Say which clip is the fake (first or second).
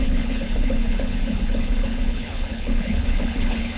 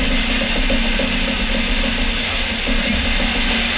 first